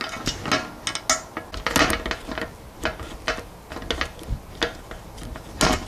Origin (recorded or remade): recorded